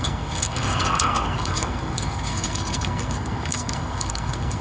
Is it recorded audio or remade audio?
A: remade